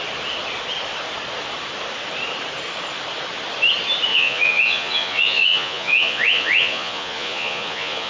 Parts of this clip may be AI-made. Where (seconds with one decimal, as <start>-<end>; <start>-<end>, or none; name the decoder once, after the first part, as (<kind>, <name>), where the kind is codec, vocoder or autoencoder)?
4.1-8.1 (vocoder, Vocos)

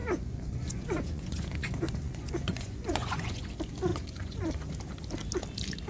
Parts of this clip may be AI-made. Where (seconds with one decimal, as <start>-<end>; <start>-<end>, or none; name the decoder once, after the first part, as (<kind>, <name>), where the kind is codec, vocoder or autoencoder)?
0.0-3.5 (vocoder, Vocos); 3.9-4.5

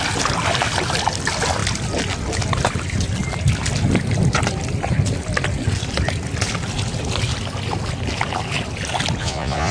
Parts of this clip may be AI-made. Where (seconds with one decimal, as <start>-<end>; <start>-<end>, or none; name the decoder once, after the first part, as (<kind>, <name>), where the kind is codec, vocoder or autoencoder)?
9.2-9.7 (vocoder, Vocos)

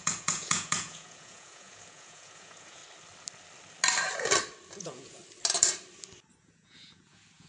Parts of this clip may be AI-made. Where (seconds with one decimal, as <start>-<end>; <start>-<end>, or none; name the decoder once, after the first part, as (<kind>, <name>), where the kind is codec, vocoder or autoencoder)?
0.0-2.8 (vocoder, Vocos); 4.8-5.2; 6.4-7.5

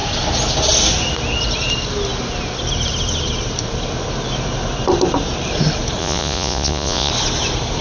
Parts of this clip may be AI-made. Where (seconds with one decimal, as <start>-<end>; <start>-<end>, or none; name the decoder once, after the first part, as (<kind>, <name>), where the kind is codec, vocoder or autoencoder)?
6.0-7.1 (vocoder, Vocos)

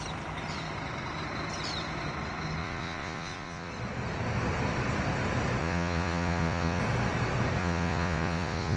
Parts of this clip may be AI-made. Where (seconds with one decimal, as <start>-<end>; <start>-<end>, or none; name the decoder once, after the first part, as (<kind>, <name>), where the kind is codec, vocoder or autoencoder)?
2.6-3.7 (vocoder, Vocos); 5.6-6.8; 7.6-8.8

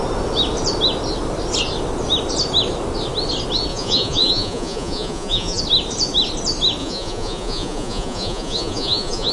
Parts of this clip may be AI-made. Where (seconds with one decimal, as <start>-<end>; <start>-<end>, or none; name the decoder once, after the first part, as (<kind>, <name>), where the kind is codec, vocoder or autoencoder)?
3.7-5.6 (vocoder, Vocos); 6.8-9.3